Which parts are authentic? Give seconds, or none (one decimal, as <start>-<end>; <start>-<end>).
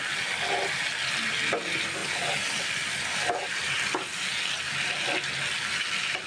0.0-6.3